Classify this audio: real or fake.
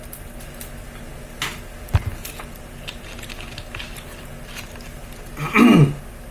real